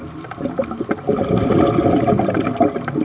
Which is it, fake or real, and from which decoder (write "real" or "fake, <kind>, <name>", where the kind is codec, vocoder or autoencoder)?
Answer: real